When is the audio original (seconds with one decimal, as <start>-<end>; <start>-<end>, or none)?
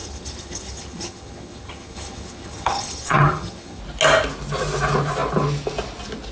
3.8-6.3